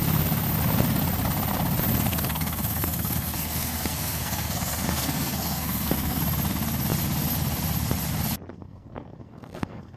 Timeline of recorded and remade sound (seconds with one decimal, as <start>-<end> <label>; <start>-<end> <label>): 0.0-2.1 recorded; 2.1-6.2 remade; 6.2-8.5 recorded; 8.5-10.0 remade